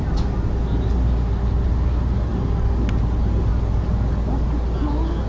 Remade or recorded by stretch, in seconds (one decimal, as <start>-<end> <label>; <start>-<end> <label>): 0.0-5.3 recorded